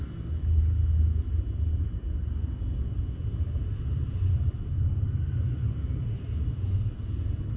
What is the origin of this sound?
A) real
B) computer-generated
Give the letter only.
A